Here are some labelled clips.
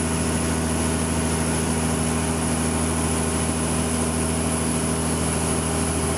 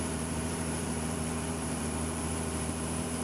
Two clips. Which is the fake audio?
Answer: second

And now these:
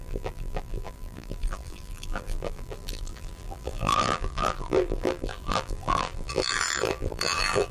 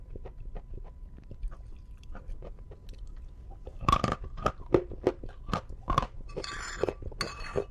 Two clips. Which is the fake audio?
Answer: first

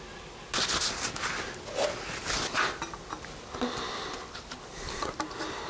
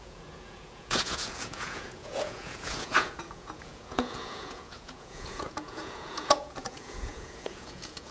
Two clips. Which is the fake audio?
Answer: second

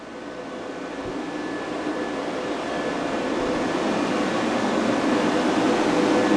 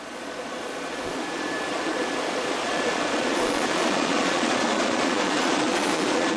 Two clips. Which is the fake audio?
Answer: second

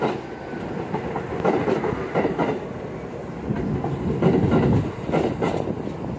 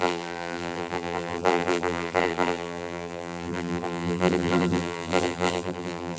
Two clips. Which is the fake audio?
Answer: second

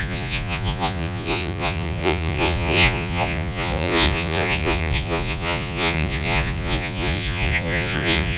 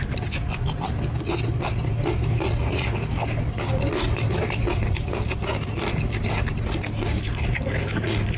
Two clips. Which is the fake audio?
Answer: first